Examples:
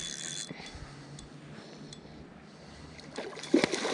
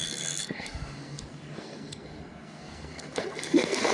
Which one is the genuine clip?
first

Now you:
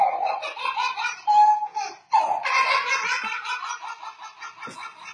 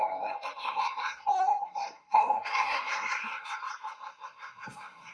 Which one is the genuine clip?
first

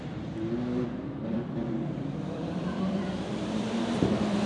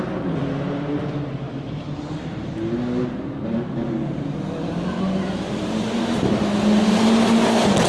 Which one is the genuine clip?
second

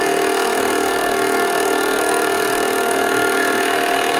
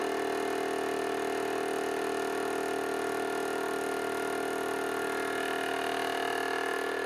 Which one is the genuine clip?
second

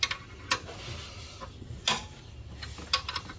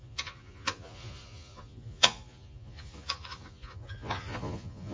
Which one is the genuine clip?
first